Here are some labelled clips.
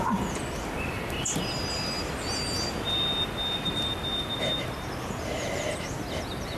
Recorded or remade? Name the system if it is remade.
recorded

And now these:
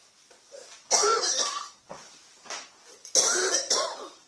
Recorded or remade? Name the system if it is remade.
recorded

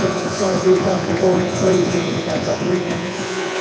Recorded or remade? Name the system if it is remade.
remade, vocoder, Vocos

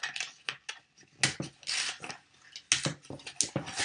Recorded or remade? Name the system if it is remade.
recorded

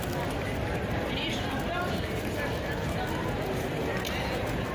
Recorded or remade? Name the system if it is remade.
recorded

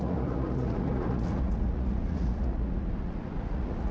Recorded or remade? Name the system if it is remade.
remade, vocoder, Vocos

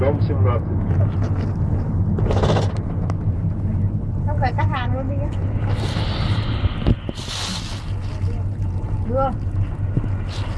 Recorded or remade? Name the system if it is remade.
recorded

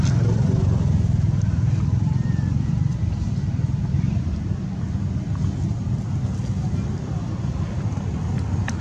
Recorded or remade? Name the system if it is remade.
recorded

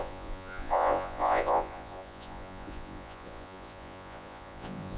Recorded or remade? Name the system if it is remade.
remade, vocoder, Vocos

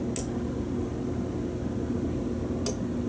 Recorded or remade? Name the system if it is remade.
recorded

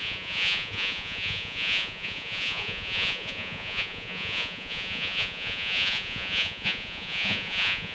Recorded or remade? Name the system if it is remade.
remade, vocoder, Vocos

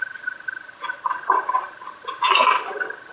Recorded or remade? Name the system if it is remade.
recorded